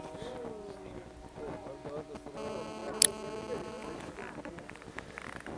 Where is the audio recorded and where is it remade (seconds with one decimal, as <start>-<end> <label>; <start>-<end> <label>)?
0.0-5.6 recorded